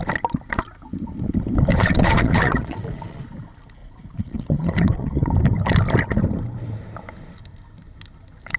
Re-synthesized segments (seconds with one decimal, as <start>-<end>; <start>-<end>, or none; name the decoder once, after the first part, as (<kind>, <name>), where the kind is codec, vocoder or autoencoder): 1.7-3.2 (vocoder, Vocos); 3.8-5.3